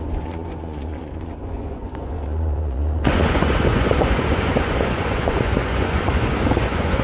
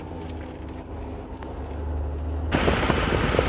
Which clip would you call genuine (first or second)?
second